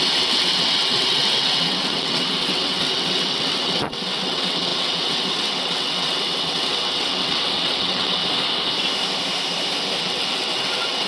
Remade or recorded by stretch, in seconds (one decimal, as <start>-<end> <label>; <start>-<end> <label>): 0.0-8.2 remade; 8.2-10.0 recorded; 10.0-11.1 remade